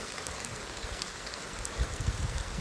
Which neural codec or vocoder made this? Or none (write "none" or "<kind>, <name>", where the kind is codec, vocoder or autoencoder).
codec, SNAC